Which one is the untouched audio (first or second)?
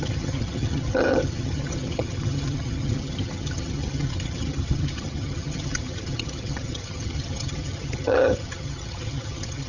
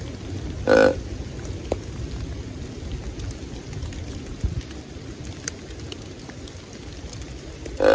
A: second